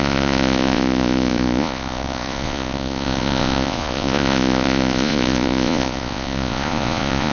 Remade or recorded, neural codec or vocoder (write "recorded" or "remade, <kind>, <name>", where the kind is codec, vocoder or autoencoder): remade, vocoder, Vocos